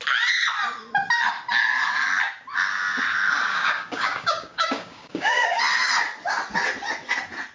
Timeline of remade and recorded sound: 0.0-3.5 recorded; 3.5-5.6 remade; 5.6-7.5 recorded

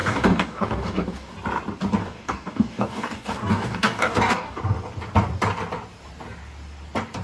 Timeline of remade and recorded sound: 0.0-1.3 remade; 1.3-2.0 recorded; 2.0-4.6 remade; 4.6-7.2 recorded

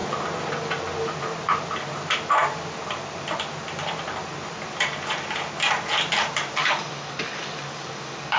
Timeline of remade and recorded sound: 0.0-6.6 recorded; 6.6-8.4 remade

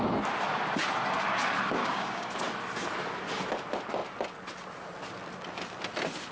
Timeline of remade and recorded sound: 0.0-1.8 recorded; 1.8-2.3 remade; 2.3-6.3 recorded

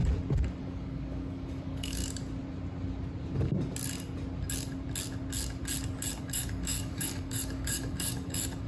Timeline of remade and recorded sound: 0.0-0.6 recorded; 0.6-2.0 remade; 2.0-6.2 recorded; 6.2-8.7 remade

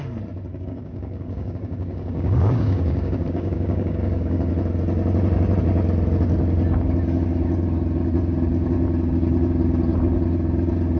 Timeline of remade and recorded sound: 0.0-0.5 recorded; 0.5-4.5 remade; 4.5-11.0 recorded

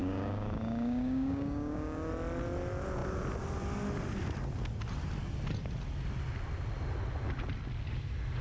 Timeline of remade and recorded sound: 0.0-2.1 remade; 2.1-8.4 recorded

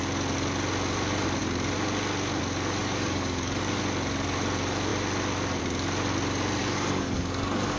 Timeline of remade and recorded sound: 0.0-2.8 recorded; 2.8-3.8 remade; 3.8-6.6 recorded; 6.6-7.8 remade